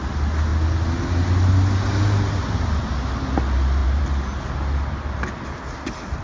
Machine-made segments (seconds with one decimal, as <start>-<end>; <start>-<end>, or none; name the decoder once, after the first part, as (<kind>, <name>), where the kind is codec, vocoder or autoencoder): 3.8-4.4 (vocoder, BigVGAN v2)